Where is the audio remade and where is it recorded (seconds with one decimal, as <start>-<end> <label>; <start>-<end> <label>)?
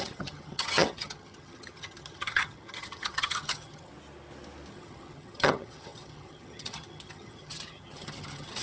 0.0-3.9 remade; 3.9-4.7 recorded; 4.7-8.6 remade